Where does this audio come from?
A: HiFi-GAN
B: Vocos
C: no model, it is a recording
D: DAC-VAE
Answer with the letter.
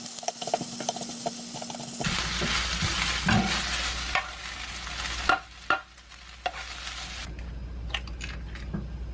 C